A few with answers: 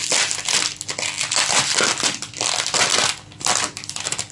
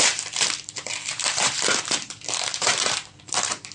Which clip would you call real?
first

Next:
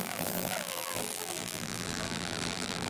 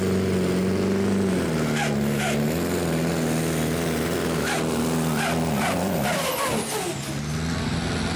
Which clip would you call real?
second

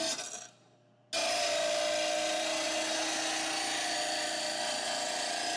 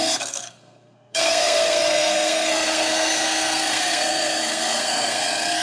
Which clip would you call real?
first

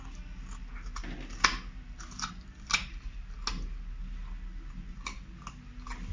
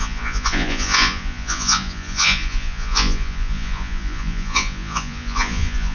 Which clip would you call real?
first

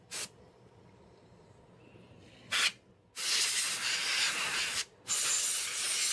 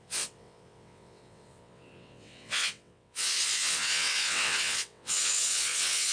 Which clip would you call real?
first